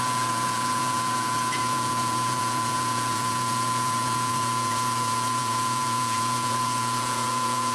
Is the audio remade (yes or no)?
yes